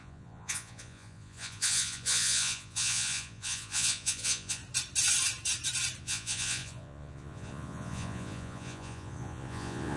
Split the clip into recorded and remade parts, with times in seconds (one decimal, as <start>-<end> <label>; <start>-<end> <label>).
0.0-4.6 remade; 4.6-6.0 recorded; 6.0-10.0 remade